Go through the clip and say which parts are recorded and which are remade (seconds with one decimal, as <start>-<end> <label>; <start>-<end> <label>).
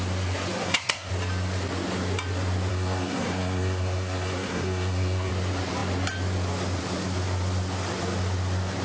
0.0-0.6 recorded; 0.6-1.1 remade; 1.1-2.7 recorded; 2.7-5.3 remade; 5.3-8.8 recorded